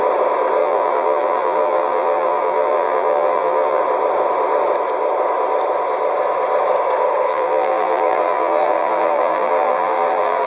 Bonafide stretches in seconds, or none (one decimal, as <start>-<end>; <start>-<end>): 0.0-0.6; 3.8-7.3